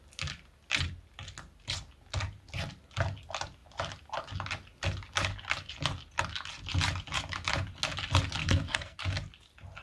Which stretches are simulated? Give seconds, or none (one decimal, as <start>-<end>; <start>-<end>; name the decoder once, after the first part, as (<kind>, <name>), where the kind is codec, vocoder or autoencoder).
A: 8.4-9.0 (codec, SNAC)

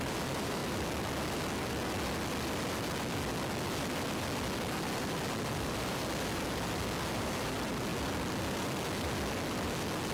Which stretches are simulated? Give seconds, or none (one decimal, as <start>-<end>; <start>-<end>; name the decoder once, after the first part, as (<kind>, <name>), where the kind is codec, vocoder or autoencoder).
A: 0.0-0.6 (vocoder, BigVGAN v2); 5.0-6.0; 7.2-7.9